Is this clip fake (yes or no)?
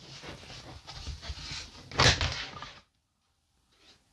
no